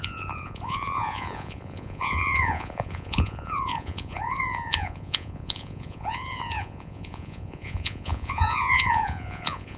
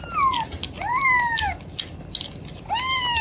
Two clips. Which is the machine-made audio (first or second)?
first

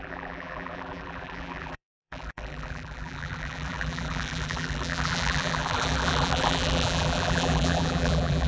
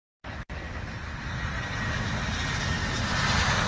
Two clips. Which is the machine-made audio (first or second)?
first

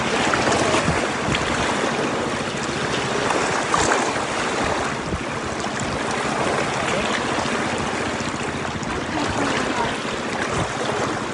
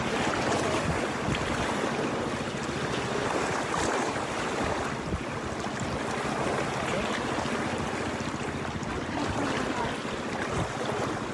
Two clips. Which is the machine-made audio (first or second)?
second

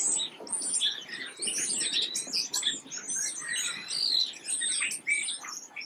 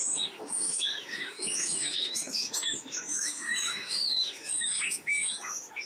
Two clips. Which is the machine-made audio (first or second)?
second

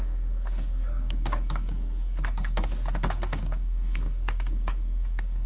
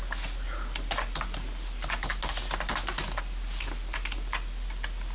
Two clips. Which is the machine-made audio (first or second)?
first